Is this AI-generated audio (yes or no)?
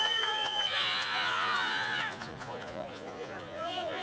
yes